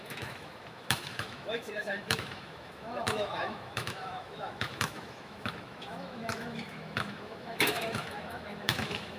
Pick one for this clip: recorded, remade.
remade